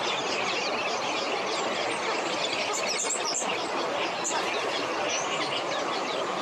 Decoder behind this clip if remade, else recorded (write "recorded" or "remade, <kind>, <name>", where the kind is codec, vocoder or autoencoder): recorded